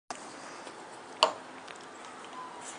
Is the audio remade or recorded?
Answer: recorded